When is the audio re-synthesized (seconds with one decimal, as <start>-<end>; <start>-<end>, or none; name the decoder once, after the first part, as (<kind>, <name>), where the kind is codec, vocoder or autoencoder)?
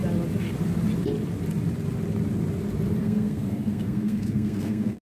3.0-5.0 (codec, SNAC)